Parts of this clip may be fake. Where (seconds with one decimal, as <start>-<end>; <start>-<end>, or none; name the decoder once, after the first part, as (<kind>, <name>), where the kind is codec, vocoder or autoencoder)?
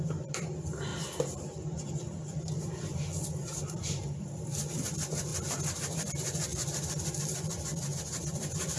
0.0-0.9 (vocoder, BigVGAN v2); 2.6-5.3; 6.1-7.7; 8.2-8.8